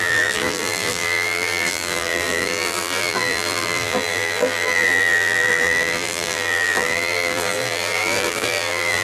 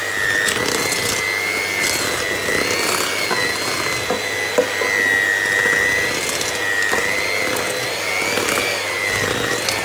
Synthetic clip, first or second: first